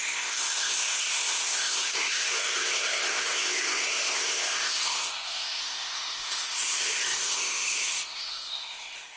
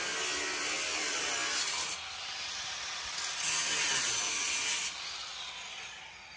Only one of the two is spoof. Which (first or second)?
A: first